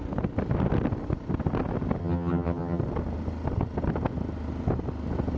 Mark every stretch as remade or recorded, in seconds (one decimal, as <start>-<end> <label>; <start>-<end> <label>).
0.0-2.0 recorded; 2.0-2.8 remade; 2.8-5.4 recorded